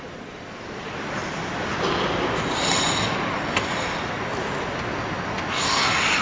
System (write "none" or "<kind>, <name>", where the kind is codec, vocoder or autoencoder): none